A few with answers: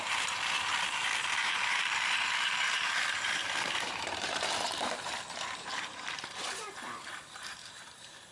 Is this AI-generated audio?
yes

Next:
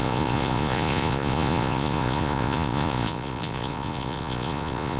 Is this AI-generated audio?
yes